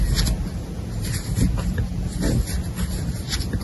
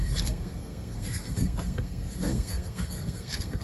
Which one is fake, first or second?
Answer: second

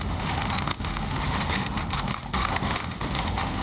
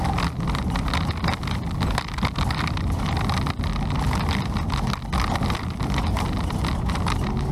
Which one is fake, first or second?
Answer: first